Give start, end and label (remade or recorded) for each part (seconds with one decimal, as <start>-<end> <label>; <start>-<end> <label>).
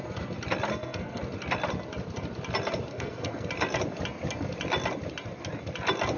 0.0-0.7 recorded; 0.7-1.2 remade; 1.2-2.9 recorded; 2.9-3.5 remade; 3.5-6.2 recorded